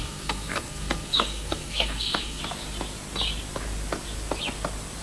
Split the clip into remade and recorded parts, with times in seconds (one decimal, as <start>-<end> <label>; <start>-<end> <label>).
0.0-2.4 remade; 2.4-5.0 recorded